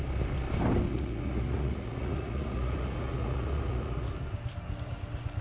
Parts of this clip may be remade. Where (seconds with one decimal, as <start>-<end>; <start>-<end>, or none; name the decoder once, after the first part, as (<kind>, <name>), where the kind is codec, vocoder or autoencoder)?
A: 0.9-4.1 (vocoder, Vocos)